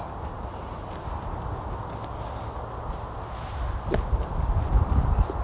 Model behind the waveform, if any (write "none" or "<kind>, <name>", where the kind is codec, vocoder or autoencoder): none